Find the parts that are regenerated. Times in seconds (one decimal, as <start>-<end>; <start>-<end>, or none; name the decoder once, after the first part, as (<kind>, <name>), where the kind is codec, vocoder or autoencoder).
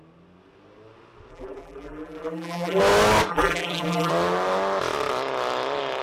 1.3-2.8 (vocoder, BigVGAN v2); 3.3-4.1